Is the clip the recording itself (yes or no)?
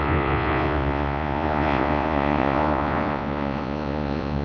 no